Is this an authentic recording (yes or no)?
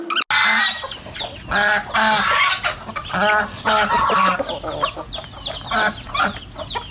yes